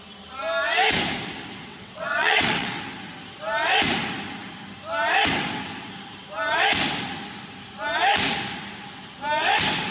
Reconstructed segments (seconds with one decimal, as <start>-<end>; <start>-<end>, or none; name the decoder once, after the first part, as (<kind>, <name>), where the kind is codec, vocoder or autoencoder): 1.7-2.8 (vocoder, WaveNeXt)